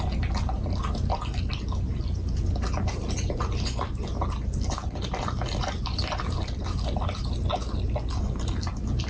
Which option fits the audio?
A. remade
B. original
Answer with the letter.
B